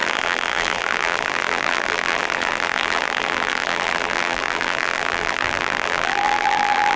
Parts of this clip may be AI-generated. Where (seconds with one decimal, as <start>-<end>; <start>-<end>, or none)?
0.0-7.0